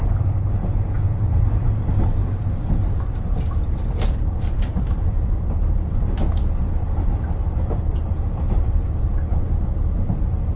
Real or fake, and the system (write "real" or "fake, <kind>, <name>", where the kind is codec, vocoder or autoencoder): fake, vocoder, BigVGAN v2